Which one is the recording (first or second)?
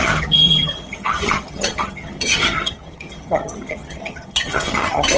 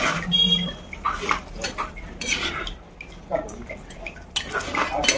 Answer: second